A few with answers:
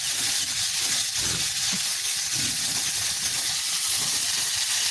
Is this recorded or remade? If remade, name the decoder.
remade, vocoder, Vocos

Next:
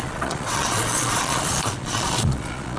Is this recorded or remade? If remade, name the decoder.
remade, vocoder, Vocos